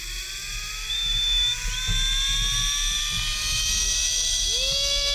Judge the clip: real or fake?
real